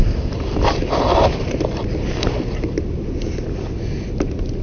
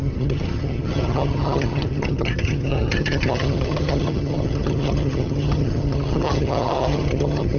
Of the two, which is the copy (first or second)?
second